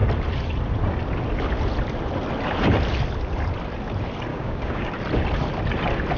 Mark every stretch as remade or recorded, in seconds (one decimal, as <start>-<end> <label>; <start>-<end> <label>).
0.0-4.3 recorded; 4.3-4.9 remade; 4.9-6.2 recorded